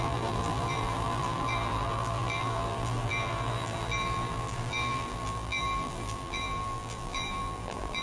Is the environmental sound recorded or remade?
remade